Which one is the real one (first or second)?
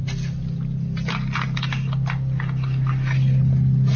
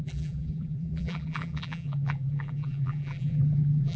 first